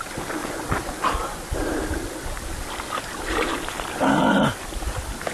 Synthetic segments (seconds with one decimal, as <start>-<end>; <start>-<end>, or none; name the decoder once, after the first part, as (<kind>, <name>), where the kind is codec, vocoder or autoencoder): none